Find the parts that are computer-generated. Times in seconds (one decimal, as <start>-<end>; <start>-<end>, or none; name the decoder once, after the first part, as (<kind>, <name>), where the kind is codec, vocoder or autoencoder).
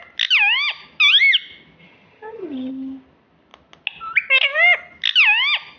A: 1.8-2.7 (vocoder, HiFi-GAN)